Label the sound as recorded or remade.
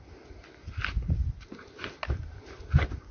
recorded